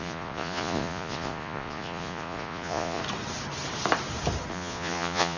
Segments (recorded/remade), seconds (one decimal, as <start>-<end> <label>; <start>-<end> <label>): 0.0-3.0 remade; 3.0-4.5 recorded; 4.5-5.4 remade